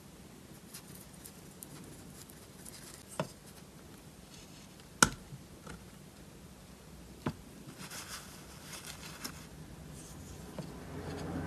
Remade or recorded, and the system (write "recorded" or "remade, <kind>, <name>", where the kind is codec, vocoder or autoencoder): recorded